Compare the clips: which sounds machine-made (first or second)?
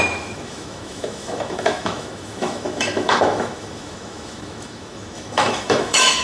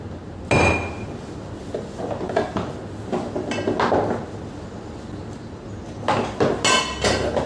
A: first